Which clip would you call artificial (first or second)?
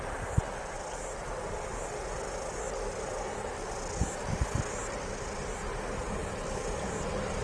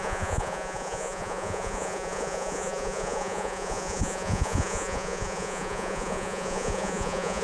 second